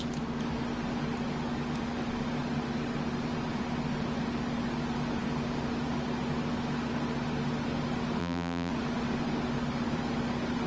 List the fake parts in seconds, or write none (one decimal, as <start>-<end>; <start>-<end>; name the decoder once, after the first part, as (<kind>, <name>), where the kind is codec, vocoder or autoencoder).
8.2-8.7 (vocoder, BigVGAN v2)